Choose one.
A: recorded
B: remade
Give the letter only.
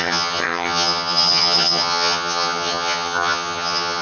B